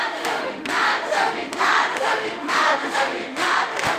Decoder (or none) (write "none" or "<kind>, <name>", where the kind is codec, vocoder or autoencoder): autoencoder, DAC-VAE